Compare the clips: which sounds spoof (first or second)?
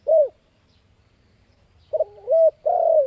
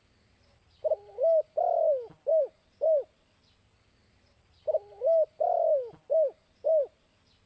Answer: first